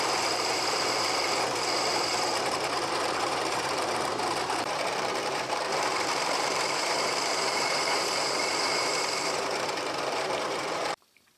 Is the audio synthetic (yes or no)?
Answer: yes